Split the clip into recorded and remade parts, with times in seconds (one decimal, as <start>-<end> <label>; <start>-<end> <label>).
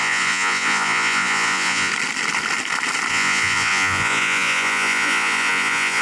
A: 0.0-1.9 remade; 1.9-3.1 recorded; 3.1-6.0 remade